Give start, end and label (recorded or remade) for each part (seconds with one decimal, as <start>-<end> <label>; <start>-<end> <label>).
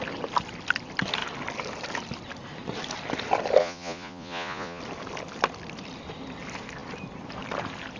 0.0-3.6 recorded; 3.6-4.8 remade; 4.8-8.0 recorded